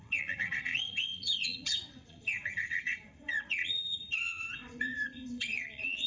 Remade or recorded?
remade